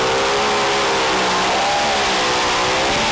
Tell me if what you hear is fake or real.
real